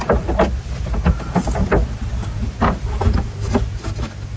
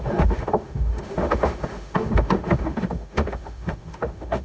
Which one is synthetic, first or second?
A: second